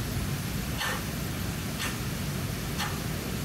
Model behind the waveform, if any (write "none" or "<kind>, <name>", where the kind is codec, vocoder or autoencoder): none